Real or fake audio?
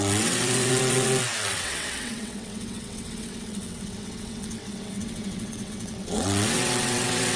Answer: fake